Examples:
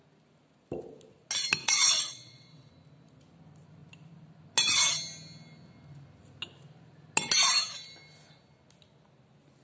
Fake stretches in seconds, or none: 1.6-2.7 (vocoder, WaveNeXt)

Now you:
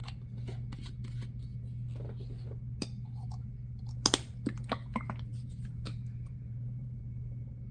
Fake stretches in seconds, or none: 5.3-7.0 (vocoder, BigVGAN v2)

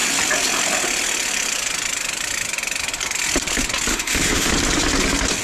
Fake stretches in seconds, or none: 3.9-4.5 (autoencoder, DAC-VAE)